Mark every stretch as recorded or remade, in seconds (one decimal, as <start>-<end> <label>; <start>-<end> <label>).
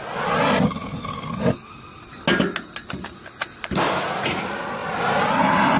0.0-5.8 recorded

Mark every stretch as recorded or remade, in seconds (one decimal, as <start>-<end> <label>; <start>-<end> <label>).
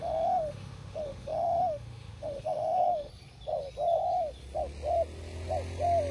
0.0-3.1 remade; 3.1-6.1 recorded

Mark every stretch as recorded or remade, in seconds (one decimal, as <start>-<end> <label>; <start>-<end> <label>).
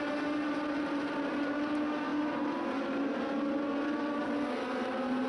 0.0-5.3 recorded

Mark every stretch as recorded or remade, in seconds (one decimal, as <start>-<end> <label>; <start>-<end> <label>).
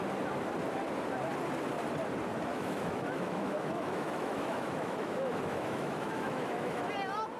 0.0-2.5 recorded; 2.5-6.9 remade; 6.9-7.4 recorded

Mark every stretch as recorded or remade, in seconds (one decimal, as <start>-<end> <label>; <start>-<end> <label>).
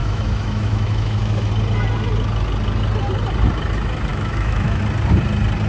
0.0-1.5 remade; 1.5-4.1 recorded; 4.1-4.8 remade; 4.8-5.7 recorded